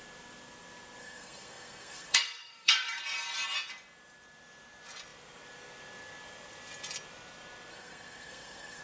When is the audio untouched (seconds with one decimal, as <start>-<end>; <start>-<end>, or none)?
0.0-1.0; 3.0-7.7